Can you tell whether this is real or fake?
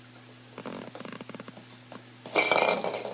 real